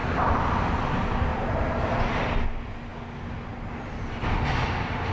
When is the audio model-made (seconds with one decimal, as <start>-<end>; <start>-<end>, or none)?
0.0-0.9; 1.3-2.2